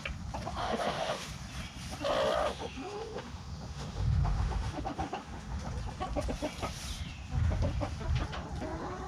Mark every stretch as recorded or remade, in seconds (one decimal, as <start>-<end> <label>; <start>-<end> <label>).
0.0-0.6 recorded; 0.6-1.3 remade; 1.3-2.4 recorded; 2.4-5.6 remade; 5.6-9.1 recorded